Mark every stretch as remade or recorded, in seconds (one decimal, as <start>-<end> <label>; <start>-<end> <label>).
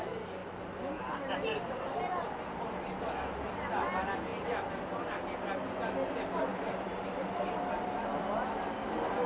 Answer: 0.0-9.3 recorded